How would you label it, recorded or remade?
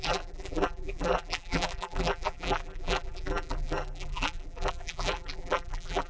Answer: remade